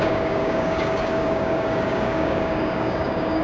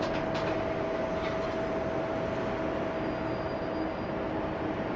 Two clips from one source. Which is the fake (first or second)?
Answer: first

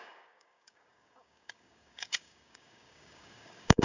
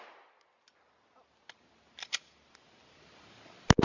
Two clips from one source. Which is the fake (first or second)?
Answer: first